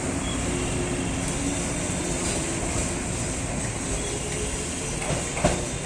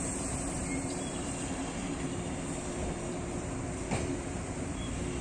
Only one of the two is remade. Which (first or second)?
second